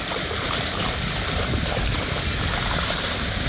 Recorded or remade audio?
recorded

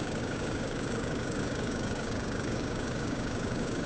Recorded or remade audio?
remade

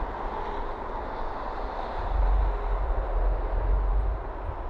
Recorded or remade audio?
recorded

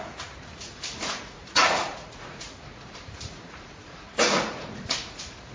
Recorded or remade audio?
remade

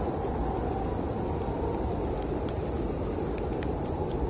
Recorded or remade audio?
recorded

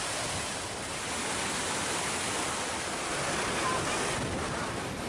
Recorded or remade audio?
recorded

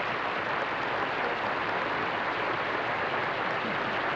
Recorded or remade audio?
recorded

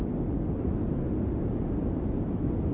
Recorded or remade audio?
recorded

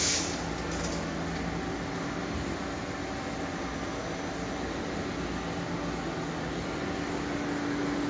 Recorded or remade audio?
recorded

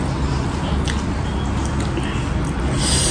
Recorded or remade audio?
recorded